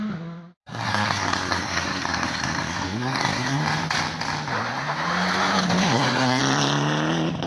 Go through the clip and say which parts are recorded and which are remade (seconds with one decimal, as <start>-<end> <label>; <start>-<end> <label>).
0.0-0.6 recorded; 0.6-3.6 remade; 3.6-5.8 recorded; 5.8-6.4 remade; 6.4-7.5 recorded